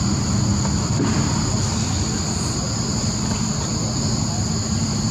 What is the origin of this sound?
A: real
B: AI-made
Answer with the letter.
A